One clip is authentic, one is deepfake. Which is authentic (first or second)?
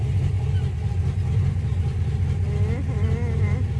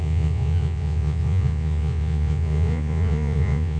first